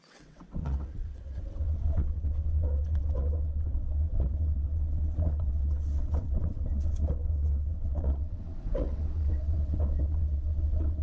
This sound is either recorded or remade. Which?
remade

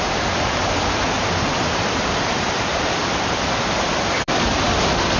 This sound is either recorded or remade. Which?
remade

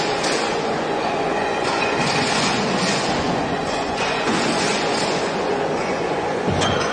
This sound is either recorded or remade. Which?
remade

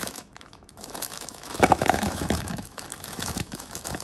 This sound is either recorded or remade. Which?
remade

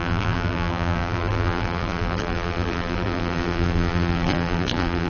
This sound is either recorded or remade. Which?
remade